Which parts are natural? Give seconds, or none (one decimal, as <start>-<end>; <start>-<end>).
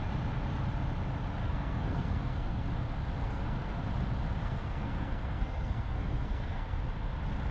0.0-1.4; 2.7-3.2; 3.8-4.4; 6.8-7.5